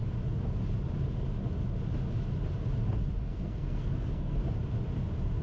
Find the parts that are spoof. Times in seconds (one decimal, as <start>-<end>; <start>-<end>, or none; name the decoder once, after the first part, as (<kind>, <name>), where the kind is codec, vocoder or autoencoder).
3.2-4.4 (codec, SNAC)